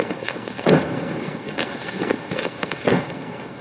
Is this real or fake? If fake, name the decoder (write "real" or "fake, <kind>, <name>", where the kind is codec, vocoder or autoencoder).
fake, codec, SNAC